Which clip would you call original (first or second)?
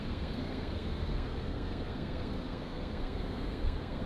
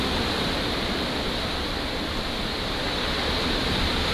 second